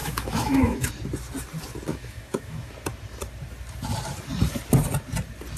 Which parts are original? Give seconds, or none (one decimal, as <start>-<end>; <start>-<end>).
0.9-1.9; 2.7-5.6